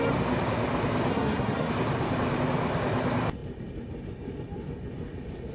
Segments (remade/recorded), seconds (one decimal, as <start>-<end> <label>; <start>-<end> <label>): 0.0-1.1 recorded; 1.1-1.7 remade; 1.7-5.5 recorded